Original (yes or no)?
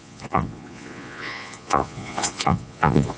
no